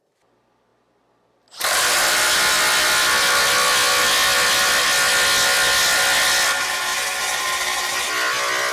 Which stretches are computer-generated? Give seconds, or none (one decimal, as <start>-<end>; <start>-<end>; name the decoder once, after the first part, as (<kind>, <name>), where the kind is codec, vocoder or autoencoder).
none